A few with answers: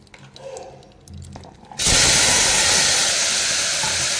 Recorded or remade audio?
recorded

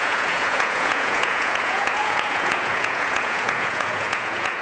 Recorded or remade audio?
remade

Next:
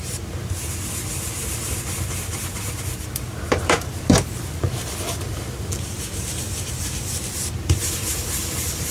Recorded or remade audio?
remade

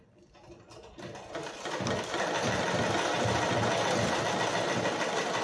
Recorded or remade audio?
recorded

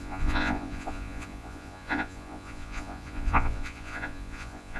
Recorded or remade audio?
remade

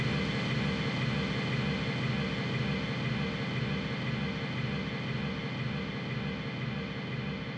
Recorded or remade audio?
recorded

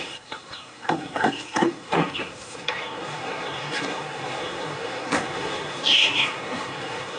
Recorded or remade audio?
remade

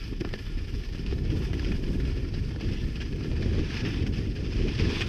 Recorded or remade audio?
recorded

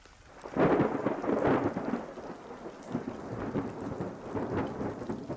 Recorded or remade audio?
recorded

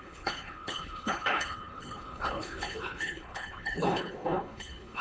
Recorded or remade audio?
remade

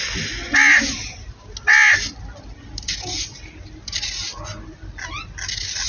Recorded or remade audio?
recorded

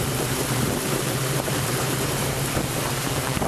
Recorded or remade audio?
remade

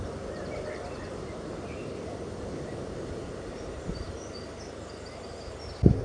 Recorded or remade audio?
recorded